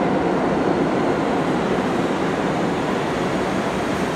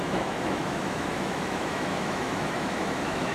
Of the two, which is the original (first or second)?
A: first